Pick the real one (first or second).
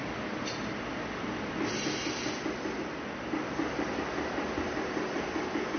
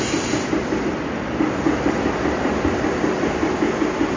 first